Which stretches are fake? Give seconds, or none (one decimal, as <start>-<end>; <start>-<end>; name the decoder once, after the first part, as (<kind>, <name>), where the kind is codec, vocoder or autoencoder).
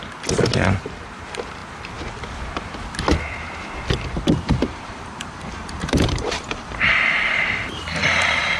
4.7-8.6 (vocoder, BigVGAN v2)